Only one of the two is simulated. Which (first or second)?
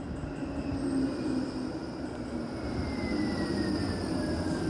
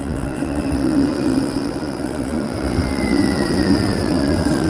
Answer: second